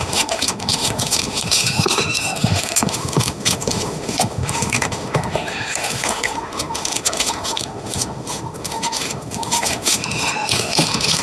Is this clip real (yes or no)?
no